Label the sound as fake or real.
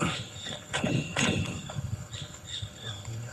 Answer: fake